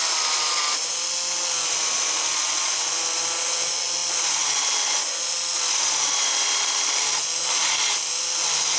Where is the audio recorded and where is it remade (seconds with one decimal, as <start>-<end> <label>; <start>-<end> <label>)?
0.0-8.8 recorded